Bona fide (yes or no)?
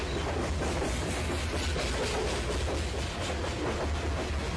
yes